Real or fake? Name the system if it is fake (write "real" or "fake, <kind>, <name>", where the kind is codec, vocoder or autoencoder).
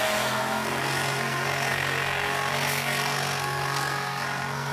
fake, codec, SNAC